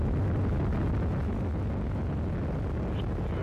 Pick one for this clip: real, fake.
real